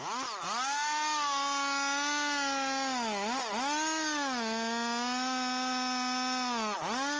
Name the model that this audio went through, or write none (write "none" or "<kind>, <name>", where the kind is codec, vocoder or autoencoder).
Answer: none